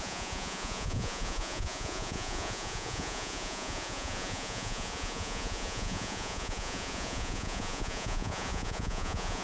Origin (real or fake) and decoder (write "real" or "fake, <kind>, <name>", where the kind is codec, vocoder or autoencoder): fake, vocoder, Vocos